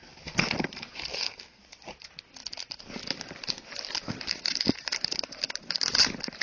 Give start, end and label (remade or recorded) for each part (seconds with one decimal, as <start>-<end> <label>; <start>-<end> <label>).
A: 0.0-1.1 recorded; 1.1-1.6 remade; 1.6-6.4 recorded